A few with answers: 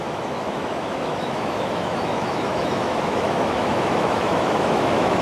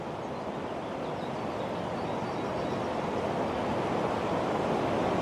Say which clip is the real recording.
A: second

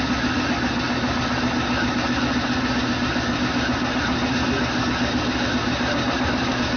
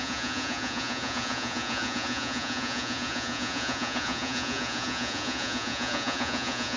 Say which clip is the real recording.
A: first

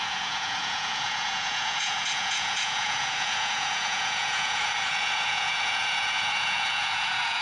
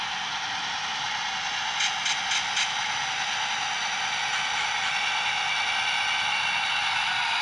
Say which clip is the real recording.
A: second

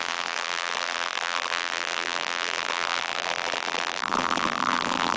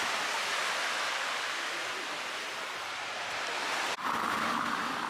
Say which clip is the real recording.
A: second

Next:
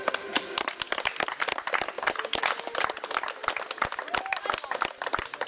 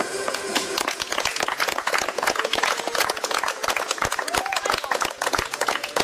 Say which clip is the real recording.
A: first